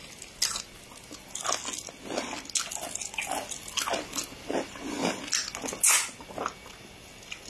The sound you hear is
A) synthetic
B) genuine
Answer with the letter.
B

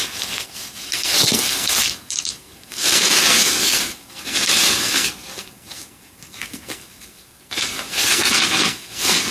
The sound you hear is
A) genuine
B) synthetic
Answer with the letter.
B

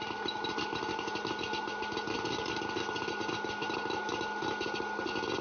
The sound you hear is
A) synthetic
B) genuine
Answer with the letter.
B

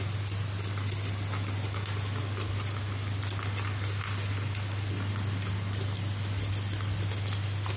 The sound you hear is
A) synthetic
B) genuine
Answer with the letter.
B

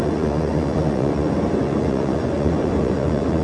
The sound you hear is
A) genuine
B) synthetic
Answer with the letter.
B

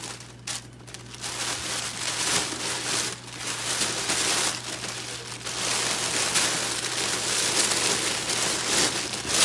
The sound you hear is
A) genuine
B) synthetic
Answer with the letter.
A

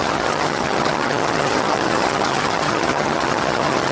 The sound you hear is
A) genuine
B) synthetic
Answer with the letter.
B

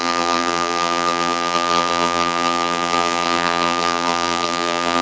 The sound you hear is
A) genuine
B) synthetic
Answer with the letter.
B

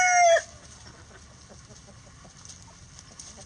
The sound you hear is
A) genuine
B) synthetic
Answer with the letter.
A